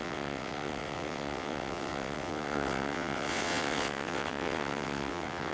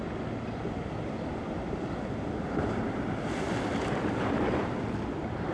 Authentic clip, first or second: second